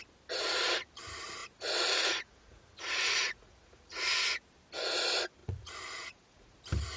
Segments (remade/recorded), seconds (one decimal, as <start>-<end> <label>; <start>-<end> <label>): 0.0-1.4 recorded; 1.4-4.2 remade; 4.2-5.4 recorded; 5.4-6.6 remade; 6.6-7.0 recorded